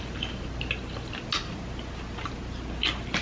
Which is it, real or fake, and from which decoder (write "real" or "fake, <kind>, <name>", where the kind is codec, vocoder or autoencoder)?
real